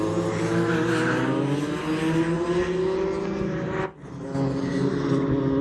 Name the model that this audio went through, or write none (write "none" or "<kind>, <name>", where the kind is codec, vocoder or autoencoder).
none